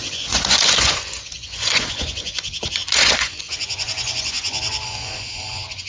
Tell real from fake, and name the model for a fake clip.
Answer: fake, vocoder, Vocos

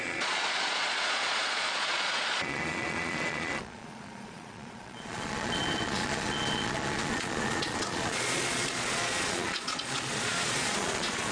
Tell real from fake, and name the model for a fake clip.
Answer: fake, vocoder, Vocos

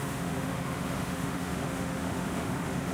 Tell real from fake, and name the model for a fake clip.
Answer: fake, autoencoder, DAC-VAE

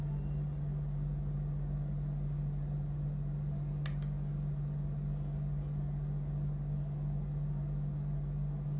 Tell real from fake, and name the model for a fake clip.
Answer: real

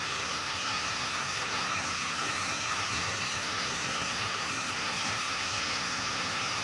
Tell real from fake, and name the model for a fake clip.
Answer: fake, codec, SNAC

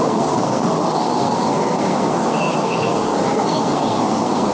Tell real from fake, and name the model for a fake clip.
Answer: fake, codec, SNAC